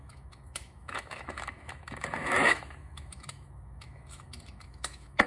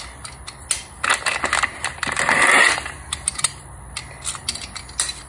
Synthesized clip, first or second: first